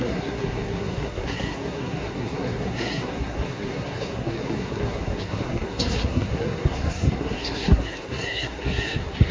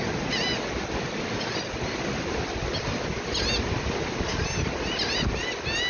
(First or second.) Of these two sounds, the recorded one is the second